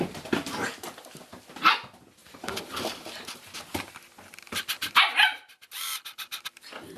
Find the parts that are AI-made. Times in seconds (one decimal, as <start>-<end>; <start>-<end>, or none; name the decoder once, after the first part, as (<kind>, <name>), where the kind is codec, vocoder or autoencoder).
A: 2.2-3.3 (vocoder, BigVGAN v2)